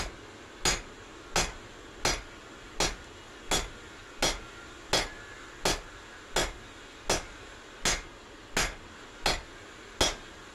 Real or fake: real